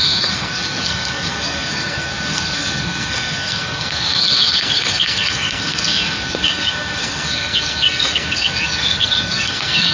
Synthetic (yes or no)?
yes